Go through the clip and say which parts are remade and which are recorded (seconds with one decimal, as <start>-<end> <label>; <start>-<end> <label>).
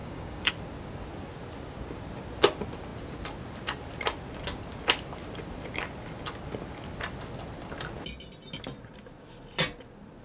0.0-0.5 remade; 0.5-10.2 recorded